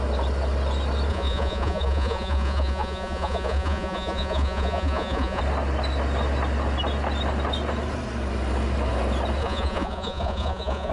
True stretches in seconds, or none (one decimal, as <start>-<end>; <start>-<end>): 0.0-1.1; 5.4-9.4